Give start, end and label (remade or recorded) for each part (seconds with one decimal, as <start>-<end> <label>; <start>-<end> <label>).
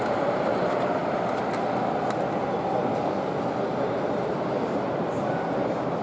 0.0-1.0 remade; 1.0-4.5 recorded; 4.5-6.0 remade